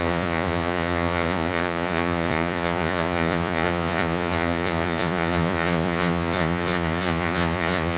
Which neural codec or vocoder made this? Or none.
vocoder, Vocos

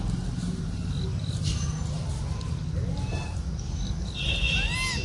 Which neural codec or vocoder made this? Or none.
none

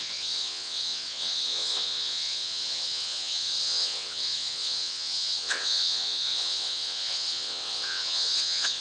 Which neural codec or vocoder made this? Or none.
vocoder, WaveNeXt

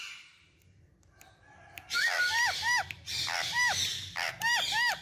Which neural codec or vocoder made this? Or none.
none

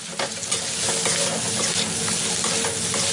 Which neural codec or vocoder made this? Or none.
none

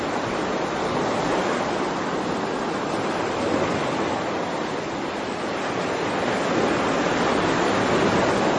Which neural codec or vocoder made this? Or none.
none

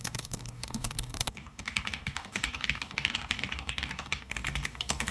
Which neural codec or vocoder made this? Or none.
codec, DAC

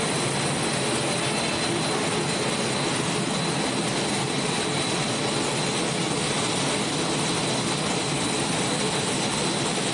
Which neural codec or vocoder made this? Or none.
none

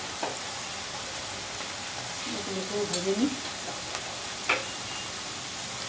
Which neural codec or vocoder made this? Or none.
none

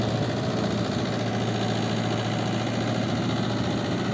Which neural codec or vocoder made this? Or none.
none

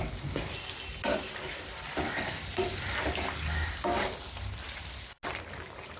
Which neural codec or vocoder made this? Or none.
none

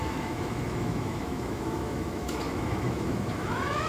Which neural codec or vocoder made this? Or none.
autoencoder, DAC-VAE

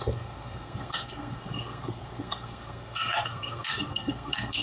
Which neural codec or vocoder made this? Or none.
codec, SNAC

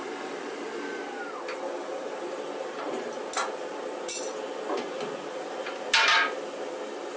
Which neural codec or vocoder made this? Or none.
none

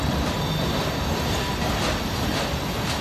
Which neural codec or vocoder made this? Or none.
none